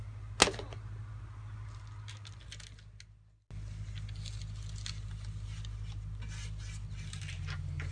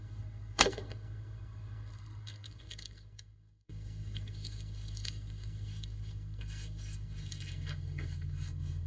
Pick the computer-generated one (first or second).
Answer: second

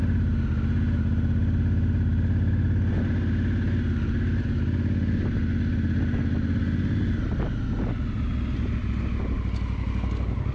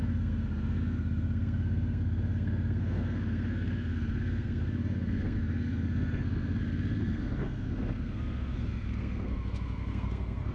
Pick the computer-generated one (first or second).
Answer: second